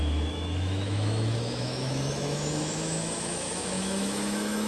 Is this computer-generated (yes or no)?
yes